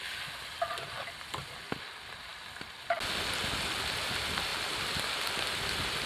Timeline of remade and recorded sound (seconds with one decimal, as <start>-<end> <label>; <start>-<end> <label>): 0.0-4.5 recorded; 4.5-5.1 remade; 5.1-6.1 recorded